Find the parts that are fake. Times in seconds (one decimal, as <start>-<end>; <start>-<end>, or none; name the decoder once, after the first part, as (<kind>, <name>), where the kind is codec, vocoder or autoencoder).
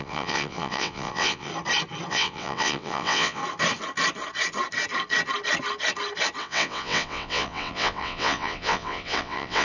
0.0-1.5 (vocoder, WaveNeXt); 2.1-3.4; 6.4-9.6